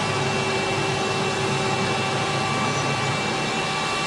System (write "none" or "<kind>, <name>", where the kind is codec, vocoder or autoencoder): none